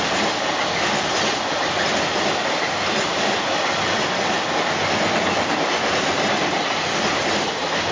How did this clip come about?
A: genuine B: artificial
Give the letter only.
A